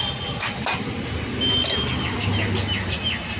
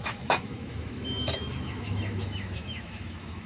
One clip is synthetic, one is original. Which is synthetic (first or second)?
second